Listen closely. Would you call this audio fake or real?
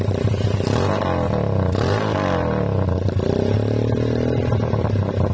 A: real